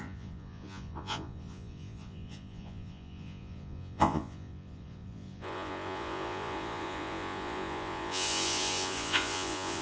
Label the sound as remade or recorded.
remade